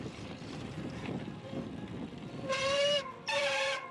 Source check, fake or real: fake